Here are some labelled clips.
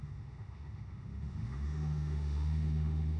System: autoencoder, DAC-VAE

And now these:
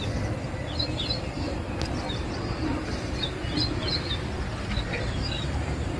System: none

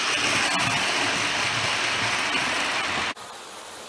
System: none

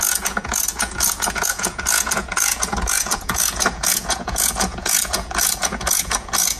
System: vocoder, Vocos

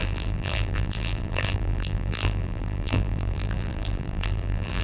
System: vocoder, BigVGAN v2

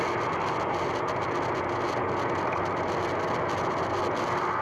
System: none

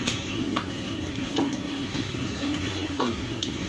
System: codec, SNAC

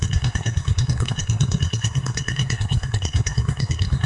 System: codec, SNAC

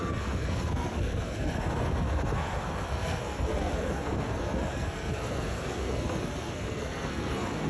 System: codec, SNAC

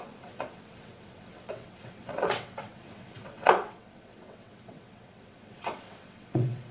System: vocoder, WaveNeXt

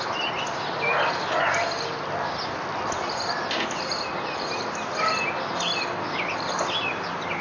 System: none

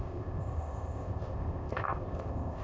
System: codec, ZipCodec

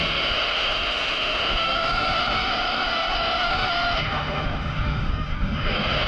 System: autoencoder, DAC-VAE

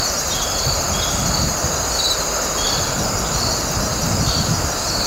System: none